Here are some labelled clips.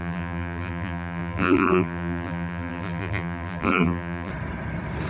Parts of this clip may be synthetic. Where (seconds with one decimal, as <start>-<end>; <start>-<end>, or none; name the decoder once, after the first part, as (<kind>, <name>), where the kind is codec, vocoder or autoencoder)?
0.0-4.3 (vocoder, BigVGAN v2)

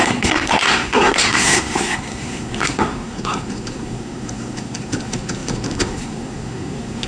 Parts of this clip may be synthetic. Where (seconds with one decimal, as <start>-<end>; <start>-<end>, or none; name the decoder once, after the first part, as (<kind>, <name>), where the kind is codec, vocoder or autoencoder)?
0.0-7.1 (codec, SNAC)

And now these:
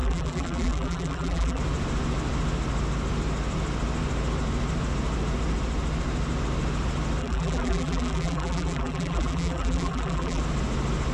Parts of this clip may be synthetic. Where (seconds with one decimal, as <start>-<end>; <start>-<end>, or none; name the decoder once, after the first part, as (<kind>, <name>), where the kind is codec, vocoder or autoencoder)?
0.0-1.6 (vocoder, BigVGAN v2); 7.2-10.4

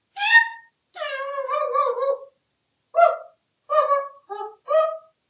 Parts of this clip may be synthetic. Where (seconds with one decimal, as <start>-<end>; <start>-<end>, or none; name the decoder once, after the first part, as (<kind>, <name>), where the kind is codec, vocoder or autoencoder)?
none